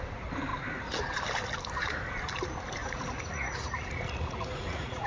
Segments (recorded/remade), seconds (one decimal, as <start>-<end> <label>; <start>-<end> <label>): 0.0-2.8 recorded; 2.8-5.1 remade